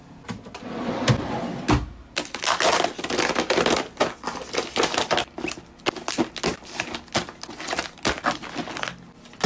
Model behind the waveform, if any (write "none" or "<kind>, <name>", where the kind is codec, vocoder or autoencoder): none